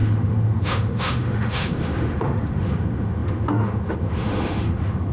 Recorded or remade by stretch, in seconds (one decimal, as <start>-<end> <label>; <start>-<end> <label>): 0.0-5.1 remade